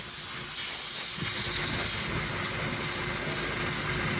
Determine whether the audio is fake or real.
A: real